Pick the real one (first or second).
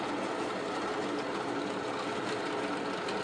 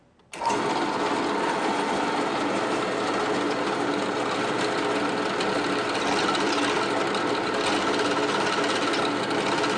second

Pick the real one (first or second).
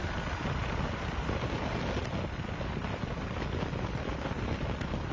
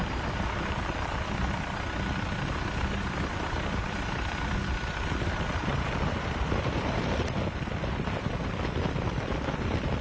first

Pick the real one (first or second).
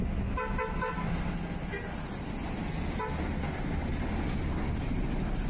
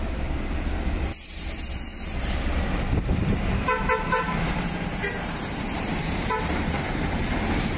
first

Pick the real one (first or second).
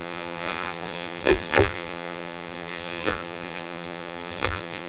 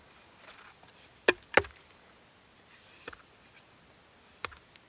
second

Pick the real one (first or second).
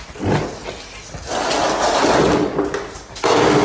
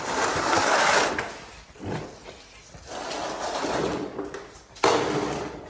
first